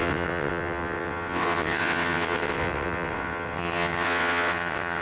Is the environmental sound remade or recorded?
remade